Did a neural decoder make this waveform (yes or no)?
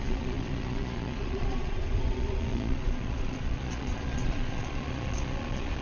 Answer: yes